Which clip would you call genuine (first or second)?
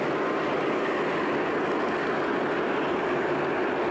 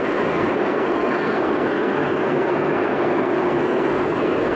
first